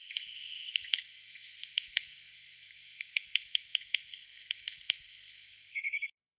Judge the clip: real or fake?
fake